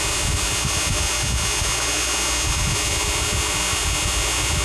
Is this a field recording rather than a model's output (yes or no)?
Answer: yes